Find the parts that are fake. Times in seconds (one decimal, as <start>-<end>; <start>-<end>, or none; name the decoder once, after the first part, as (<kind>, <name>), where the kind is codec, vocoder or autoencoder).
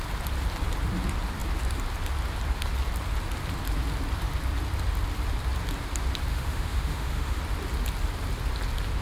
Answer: 6.3-7.4 (autoencoder, DAC-VAE)